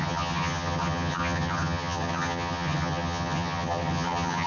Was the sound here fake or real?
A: fake